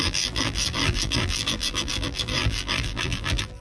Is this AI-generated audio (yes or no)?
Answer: yes